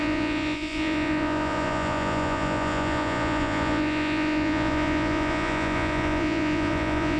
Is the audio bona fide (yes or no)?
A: no